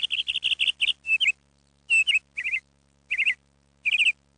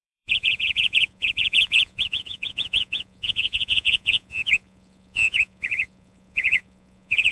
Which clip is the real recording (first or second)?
first